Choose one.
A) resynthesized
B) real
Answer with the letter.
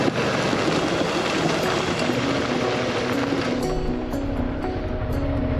B